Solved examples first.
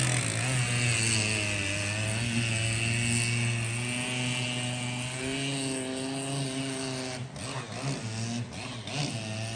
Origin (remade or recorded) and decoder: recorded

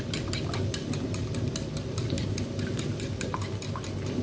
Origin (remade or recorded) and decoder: recorded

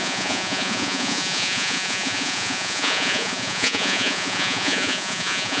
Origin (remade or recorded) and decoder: remade, vocoder, Vocos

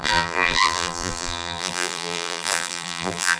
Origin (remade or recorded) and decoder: remade, vocoder, BigVGAN v2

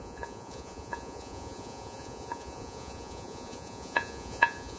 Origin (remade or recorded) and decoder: remade, vocoder, Vocos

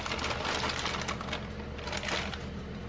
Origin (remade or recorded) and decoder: recorded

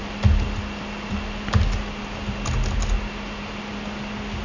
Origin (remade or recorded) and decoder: recorded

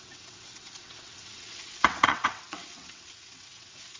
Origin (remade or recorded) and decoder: remade, vocoder, WaveNeXt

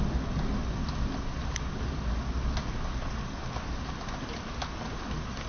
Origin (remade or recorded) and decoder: recorded